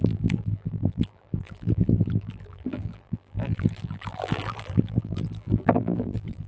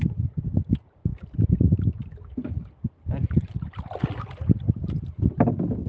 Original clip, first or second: second